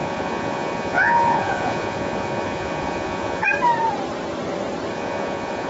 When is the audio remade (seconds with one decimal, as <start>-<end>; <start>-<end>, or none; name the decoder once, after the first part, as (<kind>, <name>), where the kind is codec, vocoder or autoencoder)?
0.0-3.4 (vocoder, Vocos); 4.9-5.7